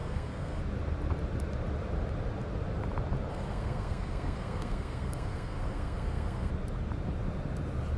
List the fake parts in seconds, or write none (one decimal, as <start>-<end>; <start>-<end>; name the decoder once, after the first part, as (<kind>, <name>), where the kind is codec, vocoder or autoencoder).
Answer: 0.0-0.6 (codec, SNAC); 3.3-6.5

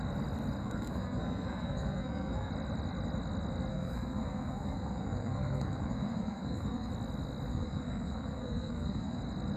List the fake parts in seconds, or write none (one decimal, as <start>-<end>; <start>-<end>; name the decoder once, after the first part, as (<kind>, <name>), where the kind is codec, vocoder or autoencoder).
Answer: 0.6-2.5 (codec, SNAC); 3.7-6.9; 7.5-9.2

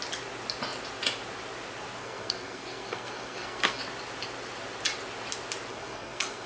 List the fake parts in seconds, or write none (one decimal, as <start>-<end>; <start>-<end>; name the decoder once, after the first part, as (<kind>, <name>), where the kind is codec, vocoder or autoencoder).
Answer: 2.0-3.8 (codec, SNAC); 5.7-6.5

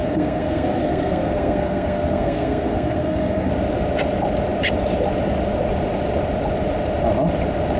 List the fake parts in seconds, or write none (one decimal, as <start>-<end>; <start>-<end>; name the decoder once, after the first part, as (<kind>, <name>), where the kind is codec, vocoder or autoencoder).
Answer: 0.0-3.5 (codec, SNAC)

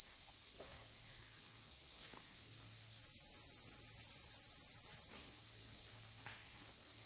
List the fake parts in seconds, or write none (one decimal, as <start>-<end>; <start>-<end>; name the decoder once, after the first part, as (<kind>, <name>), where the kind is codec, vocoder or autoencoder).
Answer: 0.0-3.0 (codec, SNAC); 5.1-7.1

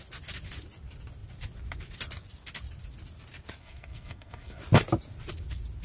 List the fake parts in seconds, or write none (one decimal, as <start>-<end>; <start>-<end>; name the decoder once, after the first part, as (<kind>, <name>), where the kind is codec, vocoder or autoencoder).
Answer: 3.6-4.6 (codec, SNAC)